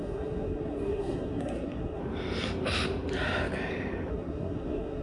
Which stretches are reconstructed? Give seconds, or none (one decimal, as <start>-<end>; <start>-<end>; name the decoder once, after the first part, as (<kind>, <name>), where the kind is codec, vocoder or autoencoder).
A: 0.0-2.0 (codec, SNAC); 4.1-5.0